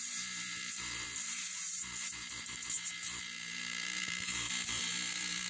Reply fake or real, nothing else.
fake